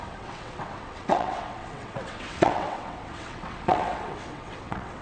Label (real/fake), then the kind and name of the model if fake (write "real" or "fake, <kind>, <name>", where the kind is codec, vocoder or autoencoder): fake, vocoder, WaveNeXt